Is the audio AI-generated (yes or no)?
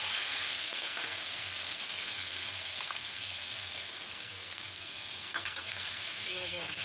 yes